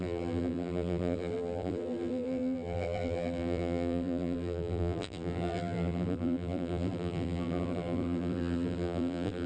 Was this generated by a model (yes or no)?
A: yes